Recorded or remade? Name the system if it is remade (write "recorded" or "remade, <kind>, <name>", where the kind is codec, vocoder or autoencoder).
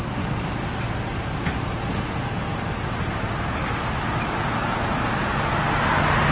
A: recorded